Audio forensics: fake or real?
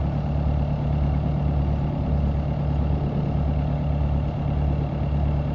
real